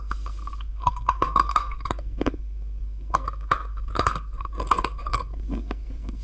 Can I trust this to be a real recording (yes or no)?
no